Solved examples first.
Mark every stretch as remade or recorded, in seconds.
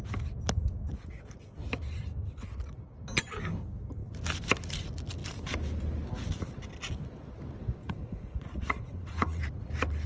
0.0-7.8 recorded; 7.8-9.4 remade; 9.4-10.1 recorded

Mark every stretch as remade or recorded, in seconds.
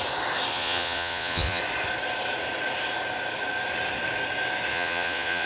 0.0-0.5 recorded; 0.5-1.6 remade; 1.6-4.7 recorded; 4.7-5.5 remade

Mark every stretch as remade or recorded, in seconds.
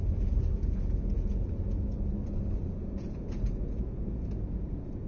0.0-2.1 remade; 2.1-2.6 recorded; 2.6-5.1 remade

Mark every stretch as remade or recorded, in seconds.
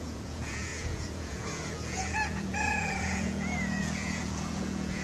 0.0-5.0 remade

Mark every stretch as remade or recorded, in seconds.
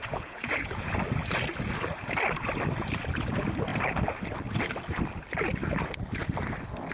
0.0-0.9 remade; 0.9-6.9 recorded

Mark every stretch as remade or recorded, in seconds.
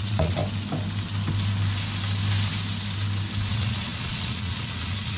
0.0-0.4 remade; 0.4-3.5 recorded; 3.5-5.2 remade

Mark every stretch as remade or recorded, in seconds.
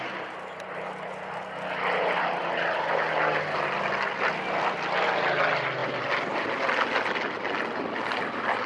0.0-8.7 recorded